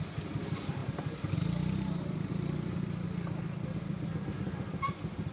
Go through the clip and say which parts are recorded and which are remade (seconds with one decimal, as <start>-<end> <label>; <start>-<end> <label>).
0.0-5.3 recorded